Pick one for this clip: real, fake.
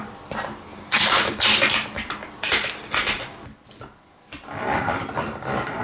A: real